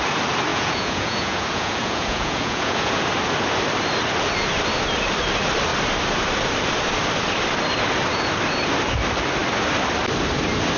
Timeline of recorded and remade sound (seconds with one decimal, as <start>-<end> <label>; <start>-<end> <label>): 0.0-0.5 recorded; 0.5-3.0 remade; 3.0-10.8 recorded